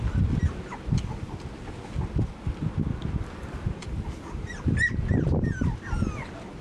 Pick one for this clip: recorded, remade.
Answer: recorded